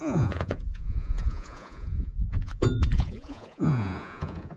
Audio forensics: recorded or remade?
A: remade